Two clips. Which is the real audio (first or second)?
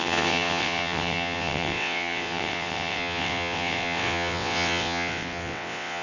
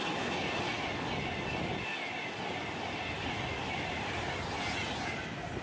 second